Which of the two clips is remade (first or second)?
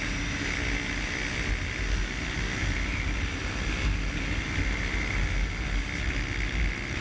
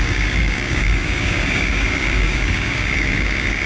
second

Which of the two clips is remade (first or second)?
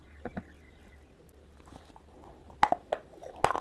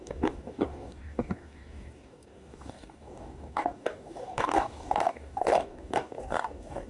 second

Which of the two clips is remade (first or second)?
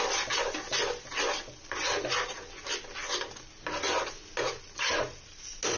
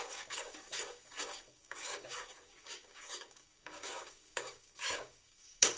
second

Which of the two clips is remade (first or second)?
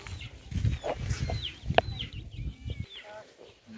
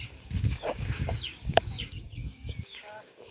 second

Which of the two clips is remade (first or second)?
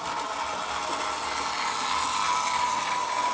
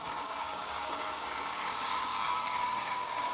second